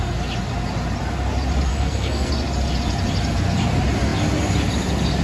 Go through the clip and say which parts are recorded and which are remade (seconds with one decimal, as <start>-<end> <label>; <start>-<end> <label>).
0.0-1.7 recorded; 1.7-2.3 remade; 2.3-5.2 recorded